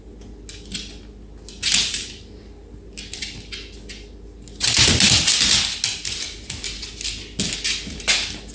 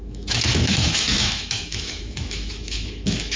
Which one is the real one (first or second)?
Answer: first